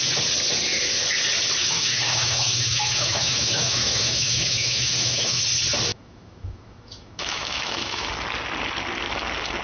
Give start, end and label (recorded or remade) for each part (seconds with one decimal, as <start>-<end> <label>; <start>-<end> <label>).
0.0-1.6 recorded; 1.6-5.4 remade; 5.4-5.9 recorded; 5.9-8.1 remade; 8.1-9.6 recorded